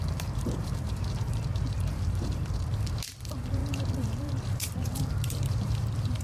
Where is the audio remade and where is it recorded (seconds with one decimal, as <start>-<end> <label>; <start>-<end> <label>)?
0.0-6.2 remade